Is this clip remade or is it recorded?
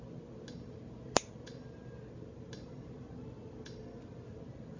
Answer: recorded